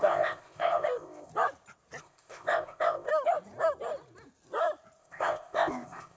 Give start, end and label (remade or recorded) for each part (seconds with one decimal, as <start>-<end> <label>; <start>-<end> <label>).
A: 0.0-1.3 remade; 1.3-2.0 recorded; 2.0-3.1 remade; 3.1-5.0 recorded; 5.0-6.2 remade